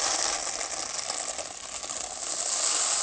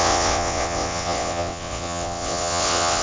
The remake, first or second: second